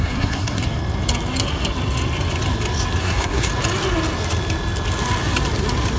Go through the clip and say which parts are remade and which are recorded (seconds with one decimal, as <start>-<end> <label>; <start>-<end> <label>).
0.0-0.6 remade; 0.6-3.0 recorded; 3.0-3.5 remade; 3.5-6.0 recorded